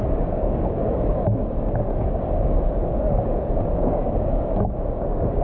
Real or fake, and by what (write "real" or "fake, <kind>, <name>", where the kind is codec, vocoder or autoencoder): fake, codec, DAC